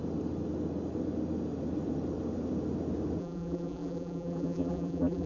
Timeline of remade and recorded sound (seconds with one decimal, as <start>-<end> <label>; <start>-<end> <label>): 0.0-3.2 recorded; 3.2-5.3 remade